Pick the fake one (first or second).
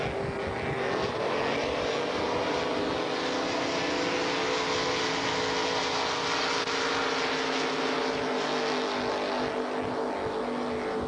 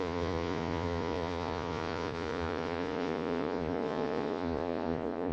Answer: second